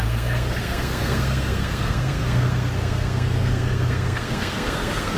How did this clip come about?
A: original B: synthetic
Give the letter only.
B